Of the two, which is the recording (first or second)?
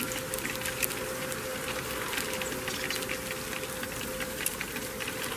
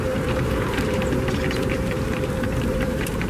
first